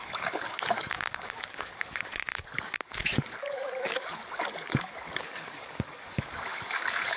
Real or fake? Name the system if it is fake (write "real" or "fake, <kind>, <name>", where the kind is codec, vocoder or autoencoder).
fake, codec, DAC